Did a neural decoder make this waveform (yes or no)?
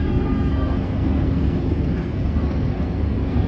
yes